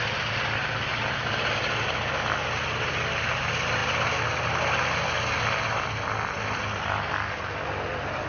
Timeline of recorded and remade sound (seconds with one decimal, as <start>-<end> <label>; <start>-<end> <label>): 0.0-8.3 recorded

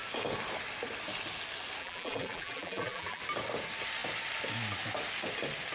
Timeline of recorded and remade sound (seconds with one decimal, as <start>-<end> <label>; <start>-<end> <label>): 0.0-1.8 recorded; 1.8-3.2 remade; 3.2-5.7 recorded

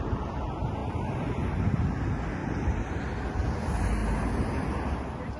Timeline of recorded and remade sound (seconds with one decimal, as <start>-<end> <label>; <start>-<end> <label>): 0.0-5.4 recorded